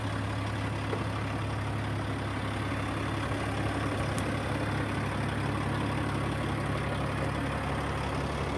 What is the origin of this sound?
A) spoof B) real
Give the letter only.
B